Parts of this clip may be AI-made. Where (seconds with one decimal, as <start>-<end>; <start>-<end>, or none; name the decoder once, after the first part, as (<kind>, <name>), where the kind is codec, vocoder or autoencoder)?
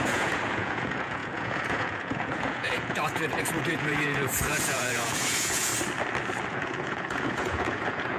0.0-5.7 (vocoder, Vocos); 6.5-8.2